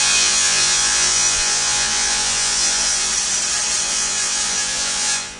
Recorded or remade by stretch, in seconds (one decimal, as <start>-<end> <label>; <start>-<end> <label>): 0.0-3.1 remade; 3.1-3.8 recorded; 3.8-5.4 remade